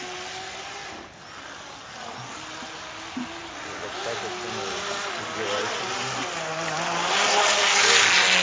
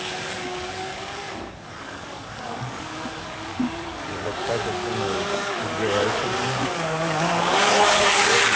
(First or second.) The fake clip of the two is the second